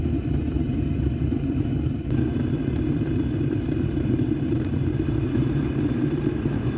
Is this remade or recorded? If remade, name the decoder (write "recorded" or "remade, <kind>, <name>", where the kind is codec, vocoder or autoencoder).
remade, vocoder, BigVGAN v2